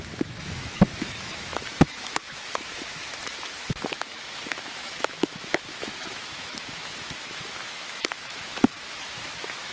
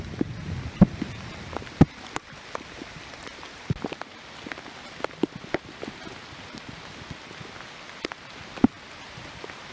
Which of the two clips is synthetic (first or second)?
first